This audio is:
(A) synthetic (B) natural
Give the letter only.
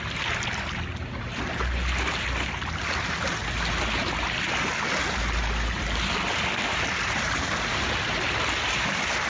B